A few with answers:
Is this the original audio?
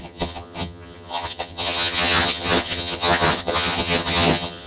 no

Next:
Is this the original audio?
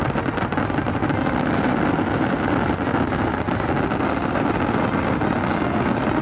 yes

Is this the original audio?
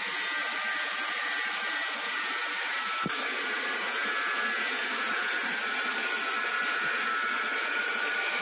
no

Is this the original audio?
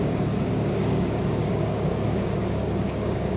no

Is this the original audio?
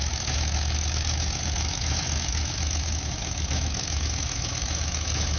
no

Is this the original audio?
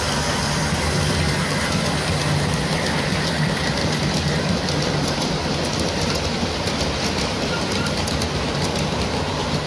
yes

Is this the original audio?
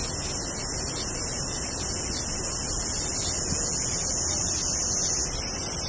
yes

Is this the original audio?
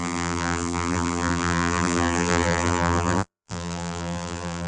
no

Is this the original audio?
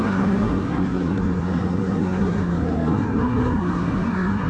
no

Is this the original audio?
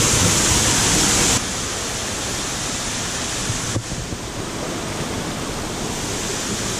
yes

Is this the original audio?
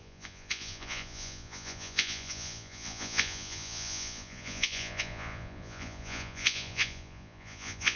no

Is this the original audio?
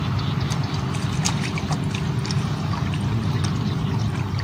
yes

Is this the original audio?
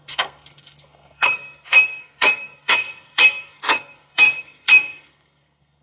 no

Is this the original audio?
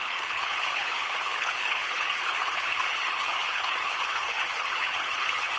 no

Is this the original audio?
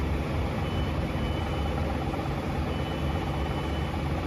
yes